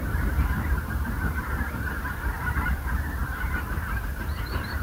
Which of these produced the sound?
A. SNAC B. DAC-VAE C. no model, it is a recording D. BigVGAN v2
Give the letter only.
D